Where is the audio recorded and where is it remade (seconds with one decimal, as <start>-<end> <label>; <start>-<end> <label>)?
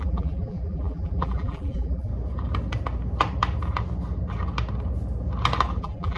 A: 0.0-2.1 remade; 2.1-5.8 recorded; 5.8-6.2 remade